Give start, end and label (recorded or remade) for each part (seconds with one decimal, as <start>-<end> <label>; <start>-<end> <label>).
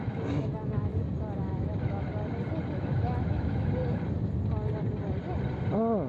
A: 0.0-0.9 remade; 0.9-1.5 recorded; 1.5-2.1 remade; 2.1-2.7 recorded; 2.7-3.8 remade; 3.8-6.1 recorded